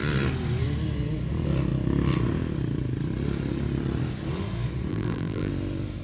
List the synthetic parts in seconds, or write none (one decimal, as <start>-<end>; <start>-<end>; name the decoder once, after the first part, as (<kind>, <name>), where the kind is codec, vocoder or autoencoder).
4.9-5.5 (vocoder, BigVGAN v2)